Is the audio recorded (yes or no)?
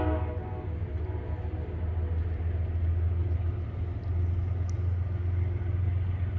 yes